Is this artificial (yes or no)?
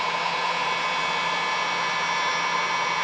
no